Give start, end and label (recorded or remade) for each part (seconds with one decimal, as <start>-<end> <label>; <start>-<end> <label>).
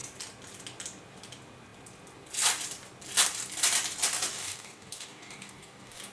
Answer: 0.0-4.3 recorded; 4.3-6.1 remade